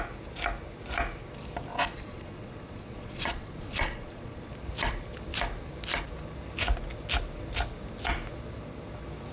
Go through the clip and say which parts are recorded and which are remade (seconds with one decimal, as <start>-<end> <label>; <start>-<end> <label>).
0.0-1.7 recorded; 1.7-4.5 remade; 4.5-9.3 recorded